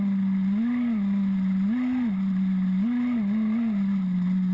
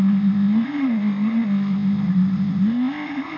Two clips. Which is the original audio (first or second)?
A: first